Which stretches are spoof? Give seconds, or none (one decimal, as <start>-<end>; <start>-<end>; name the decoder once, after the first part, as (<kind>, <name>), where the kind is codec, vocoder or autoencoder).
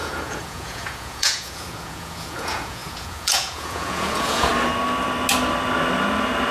0.0-4.5 (vocoder, Vocos)